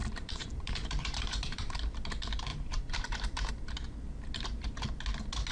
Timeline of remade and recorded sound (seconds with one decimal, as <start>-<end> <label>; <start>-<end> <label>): 0.0-2.1 remade; 2.1-2.5 recorded; 2.5-3.5 remade; 3.5-5.5 recorded